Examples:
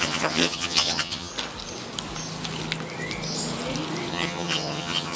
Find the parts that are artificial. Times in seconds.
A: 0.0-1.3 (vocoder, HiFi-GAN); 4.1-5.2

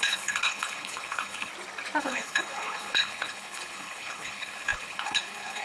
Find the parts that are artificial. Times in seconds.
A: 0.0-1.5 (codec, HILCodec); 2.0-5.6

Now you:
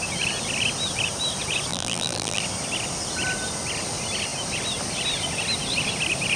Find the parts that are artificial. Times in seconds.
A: 1.7-2.4 (vocoder, BigVGAN v2)